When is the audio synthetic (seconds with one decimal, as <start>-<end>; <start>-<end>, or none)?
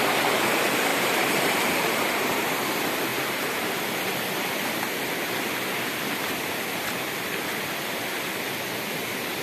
0.9-2.4; 3.1-3.6